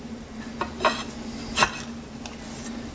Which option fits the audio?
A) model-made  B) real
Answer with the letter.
B